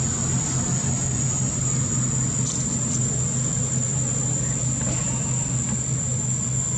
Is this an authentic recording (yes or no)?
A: yes